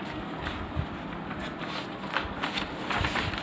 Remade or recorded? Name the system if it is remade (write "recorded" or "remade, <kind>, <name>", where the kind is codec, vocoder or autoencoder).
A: recorded